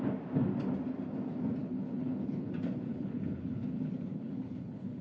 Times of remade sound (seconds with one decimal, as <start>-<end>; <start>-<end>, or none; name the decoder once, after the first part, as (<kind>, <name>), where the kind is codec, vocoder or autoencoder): 1.6-2.5 (codec, HILCodec); 2.9-5.0